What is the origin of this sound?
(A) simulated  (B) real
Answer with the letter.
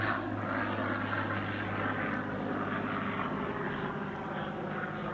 B